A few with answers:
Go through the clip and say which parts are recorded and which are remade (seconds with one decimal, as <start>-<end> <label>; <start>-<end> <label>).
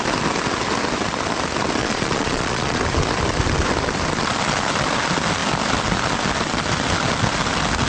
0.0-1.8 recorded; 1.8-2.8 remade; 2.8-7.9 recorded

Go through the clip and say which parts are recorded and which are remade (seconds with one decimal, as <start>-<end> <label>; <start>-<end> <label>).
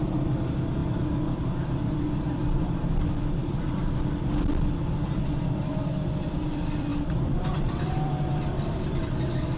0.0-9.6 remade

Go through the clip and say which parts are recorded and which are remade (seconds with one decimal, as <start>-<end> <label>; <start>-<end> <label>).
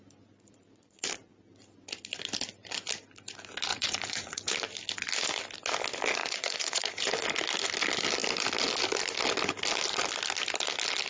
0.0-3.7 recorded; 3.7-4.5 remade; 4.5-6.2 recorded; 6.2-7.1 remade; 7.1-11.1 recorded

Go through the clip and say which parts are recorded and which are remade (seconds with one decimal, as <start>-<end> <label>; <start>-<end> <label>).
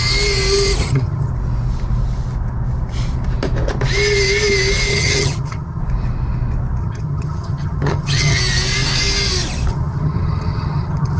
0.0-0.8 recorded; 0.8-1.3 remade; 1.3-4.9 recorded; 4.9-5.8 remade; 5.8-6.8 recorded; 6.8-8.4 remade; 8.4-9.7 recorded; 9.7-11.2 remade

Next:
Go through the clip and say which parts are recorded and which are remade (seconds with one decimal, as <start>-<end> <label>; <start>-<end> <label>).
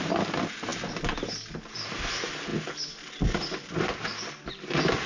0.0-5.1 recorded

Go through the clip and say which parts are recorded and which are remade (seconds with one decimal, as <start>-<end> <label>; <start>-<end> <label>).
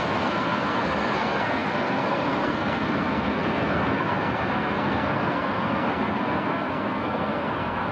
0.0-7.9 remade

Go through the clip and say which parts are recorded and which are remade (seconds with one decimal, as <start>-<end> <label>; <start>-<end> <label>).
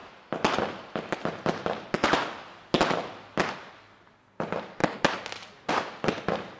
0.0-6.6 recorded